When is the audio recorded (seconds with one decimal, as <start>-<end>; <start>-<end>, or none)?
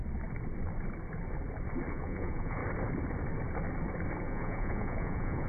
0.0-1.9; 2.6-4.2